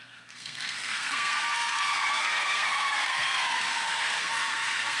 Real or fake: fake